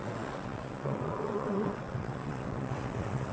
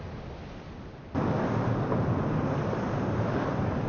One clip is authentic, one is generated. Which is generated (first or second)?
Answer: first